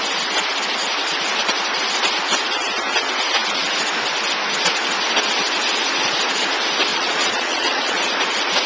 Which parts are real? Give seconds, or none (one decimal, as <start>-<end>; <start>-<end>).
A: 0.0-6.9; 8.0-8.7